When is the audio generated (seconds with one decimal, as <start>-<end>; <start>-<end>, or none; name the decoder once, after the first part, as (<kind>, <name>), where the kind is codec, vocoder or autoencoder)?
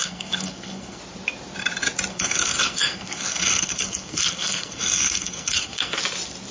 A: 0.0-1.0 (codec, SNAC); 2.1-6.0